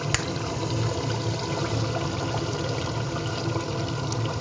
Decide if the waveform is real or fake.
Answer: real